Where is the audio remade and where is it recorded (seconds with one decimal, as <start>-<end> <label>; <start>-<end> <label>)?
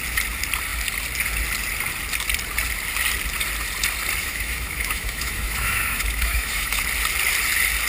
0.0-4.2 recorded; 4.2-6.8 remade; 6.8-7.9 recorded